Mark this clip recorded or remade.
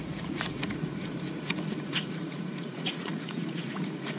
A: remade